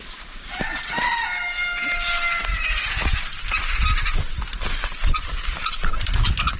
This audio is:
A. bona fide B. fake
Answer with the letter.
A